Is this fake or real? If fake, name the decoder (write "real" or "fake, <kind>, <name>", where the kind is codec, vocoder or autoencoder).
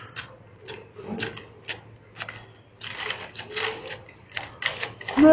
real